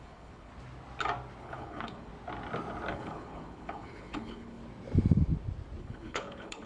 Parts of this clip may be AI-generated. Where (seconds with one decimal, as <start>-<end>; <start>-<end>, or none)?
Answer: 0.0-0.5; 1.4-2.1; 2.9-4.6; 5.8-6.7